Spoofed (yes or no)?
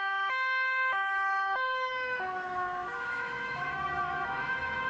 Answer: yes